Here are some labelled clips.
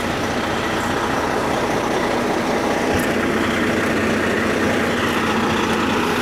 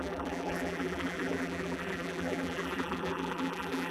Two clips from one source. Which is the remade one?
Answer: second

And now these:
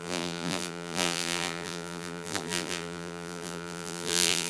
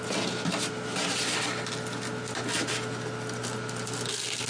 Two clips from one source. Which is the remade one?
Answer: first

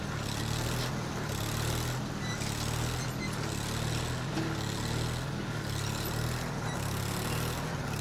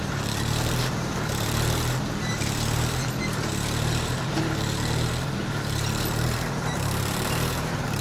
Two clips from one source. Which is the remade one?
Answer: second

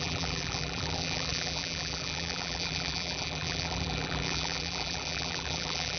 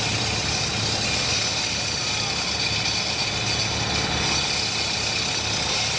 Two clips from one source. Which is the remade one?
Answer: first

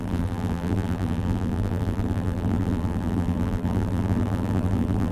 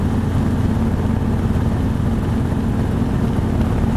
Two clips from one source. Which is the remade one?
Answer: first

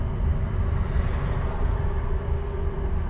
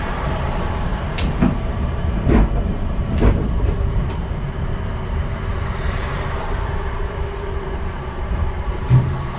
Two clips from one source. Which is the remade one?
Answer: second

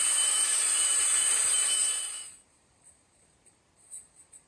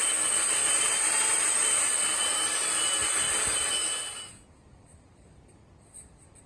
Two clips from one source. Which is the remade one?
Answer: first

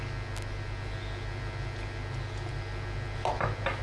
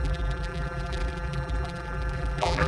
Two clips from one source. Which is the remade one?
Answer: second